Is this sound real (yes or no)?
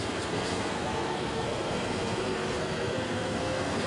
no